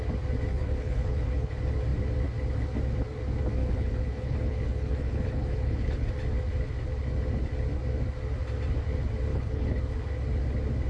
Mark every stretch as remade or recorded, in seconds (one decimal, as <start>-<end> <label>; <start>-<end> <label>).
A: 0.0-0.5 recorded; 0.5-1.5 remade; 1.5-3.6 recorded; 3.6-6.1 remade; 6.1-9.3 recorded; 9.3-9.8 remade; 9.8-10.9 recorded